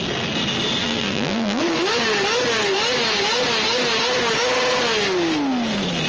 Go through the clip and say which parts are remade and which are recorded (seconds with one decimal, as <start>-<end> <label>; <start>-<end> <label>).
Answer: 0.0-0.8 recorded; 0.8-1.6 remade; 1.6-6.1 recorded